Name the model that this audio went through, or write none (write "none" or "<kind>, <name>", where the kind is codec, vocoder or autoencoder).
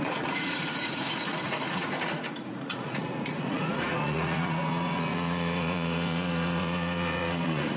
vocoder, Vocos